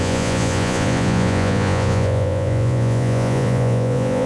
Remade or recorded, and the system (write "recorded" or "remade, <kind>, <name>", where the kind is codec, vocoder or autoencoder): remade, vocoder, Vocos